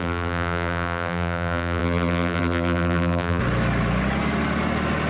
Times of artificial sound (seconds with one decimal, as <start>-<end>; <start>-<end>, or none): 0.0-3.4